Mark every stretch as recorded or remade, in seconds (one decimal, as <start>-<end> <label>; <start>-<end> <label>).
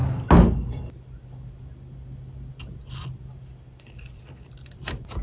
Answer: 0.0-5.2 recorded